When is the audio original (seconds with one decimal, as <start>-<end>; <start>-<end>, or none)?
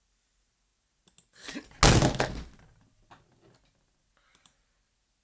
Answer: 0.0-5.2